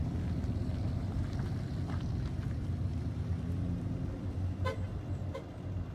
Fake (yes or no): yes